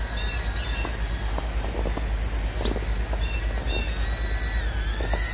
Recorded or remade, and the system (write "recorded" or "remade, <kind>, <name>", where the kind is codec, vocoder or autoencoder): recorded